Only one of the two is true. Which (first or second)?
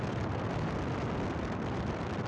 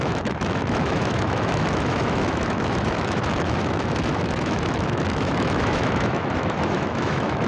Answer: first